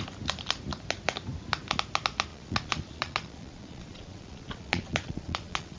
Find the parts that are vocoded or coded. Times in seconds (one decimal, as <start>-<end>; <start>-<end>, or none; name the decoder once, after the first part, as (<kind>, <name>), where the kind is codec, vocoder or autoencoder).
2.3-5.8 (vocoder, Vocos)